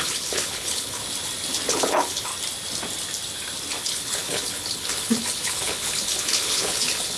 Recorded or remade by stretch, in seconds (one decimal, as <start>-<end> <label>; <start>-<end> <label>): 0.0-1.0 remade; 1.0-1.7 recorded; 1.7-2.3 remade; 2.3-3.8 recorded; 3.8-7.2 remade